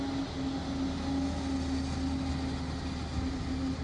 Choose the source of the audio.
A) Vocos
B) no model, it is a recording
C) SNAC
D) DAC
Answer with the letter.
B